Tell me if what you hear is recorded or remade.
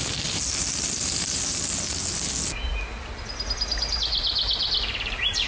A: recorded